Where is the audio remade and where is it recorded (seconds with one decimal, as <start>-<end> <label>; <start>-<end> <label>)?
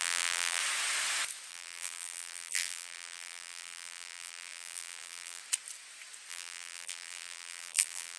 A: 0.0-0.6 remade; 0.6-1.5 recorded; 1.5-5.4 remade; 5.4-6.3 recorded; 6.3-8.2 remade